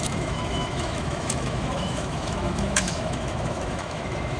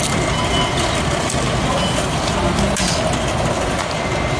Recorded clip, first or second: second